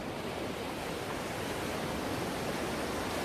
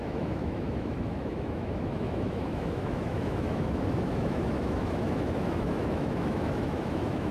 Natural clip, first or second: first